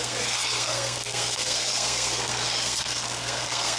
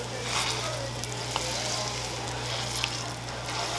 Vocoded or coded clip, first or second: first